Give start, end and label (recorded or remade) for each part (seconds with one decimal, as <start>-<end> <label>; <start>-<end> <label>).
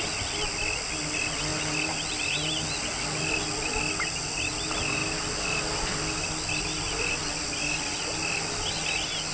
0.0-9.3 recorded